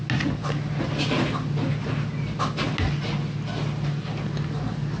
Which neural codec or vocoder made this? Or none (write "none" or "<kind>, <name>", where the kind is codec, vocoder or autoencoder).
none